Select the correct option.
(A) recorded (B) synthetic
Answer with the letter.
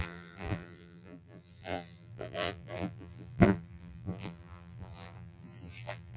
B